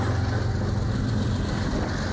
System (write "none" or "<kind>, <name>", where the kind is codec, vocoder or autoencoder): none